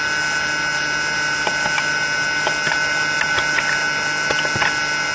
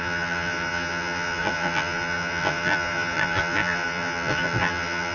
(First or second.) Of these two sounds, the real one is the first